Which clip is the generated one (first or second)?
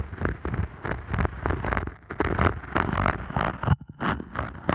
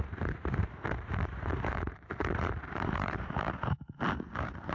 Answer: second